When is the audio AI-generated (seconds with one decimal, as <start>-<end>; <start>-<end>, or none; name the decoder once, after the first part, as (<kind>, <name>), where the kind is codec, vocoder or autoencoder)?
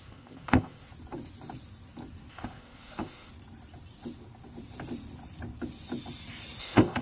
0.0-0.9 (codec, ZipCodec); 2.3-3.3; 6.6-7.0